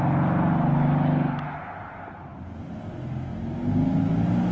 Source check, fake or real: real